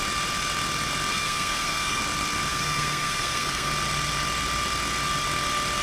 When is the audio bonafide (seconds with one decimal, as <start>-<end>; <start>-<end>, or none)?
0.0-1.1; 2.0-2.5; 3.7-5.8